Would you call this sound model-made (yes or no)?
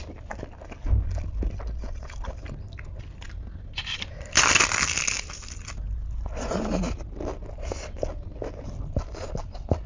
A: no